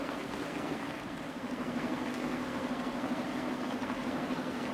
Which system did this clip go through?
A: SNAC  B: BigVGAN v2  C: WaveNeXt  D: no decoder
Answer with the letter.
A